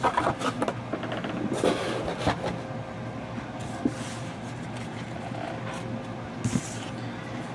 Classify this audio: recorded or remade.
recorded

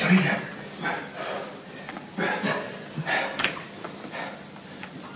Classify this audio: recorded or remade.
recorded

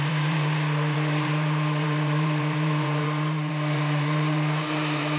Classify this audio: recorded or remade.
remade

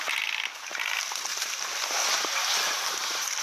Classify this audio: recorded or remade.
recorded